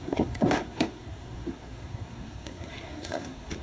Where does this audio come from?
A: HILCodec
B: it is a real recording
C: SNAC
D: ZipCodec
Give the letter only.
C